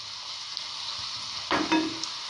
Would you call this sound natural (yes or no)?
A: yes